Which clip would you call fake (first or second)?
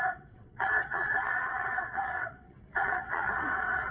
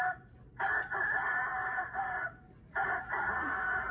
first